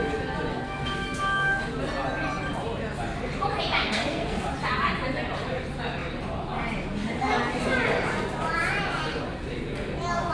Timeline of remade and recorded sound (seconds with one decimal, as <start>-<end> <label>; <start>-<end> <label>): 0.0-0.5 recorded; 0.5-1.6 remade; 1.6-3.8 recorded; 3.8-4.5 remade; 4.5-10.3 recorded